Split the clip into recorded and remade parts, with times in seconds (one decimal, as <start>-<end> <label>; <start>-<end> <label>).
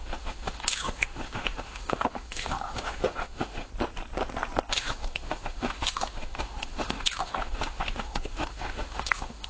0.0-3.7 remade; 3.7-4.7 recorded; 4.7-9.5 remade